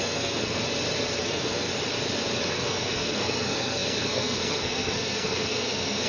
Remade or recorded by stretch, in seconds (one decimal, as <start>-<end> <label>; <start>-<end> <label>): 0.0-0.6 remade; 0.6-1.2 recorded; 1.2-1.7 remade; 1.7-2.5 recorded; 2.5-6.1 remade

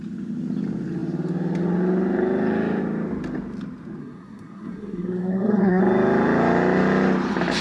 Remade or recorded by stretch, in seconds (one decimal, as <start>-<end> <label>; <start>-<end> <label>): 0.0-4.0 recorded; 4.0-5.8 remade; 5.8-7.6 recorded

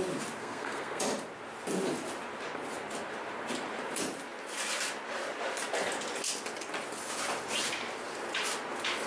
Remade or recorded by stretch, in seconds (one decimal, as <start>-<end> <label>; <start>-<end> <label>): 0.0-0.4 recorded; 0.4-1.0 remade; 1.0-9.1 recorded

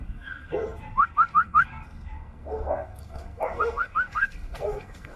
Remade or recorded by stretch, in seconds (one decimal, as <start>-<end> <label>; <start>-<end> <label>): 0.0-5.2 remade

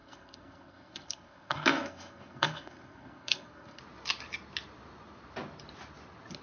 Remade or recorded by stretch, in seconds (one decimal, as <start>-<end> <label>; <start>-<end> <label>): 0.0-3.8 remade; 3.8-6.4 recorded

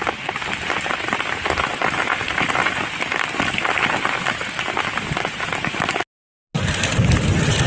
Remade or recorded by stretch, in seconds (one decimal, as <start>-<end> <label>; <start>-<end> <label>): 0.0-7.7 recorded

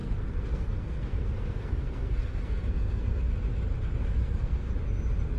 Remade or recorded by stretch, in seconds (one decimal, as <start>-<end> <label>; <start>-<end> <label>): 0.0-3.2 remade; 3.2-4.0 recorded; 4.0-4.7 remade; 4.7-5.4 recorded

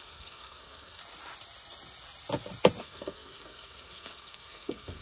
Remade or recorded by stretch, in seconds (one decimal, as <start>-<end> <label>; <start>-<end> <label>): 0.0-1.0 remade; 1.0-2.8 recorded; 2.8-5.0 remade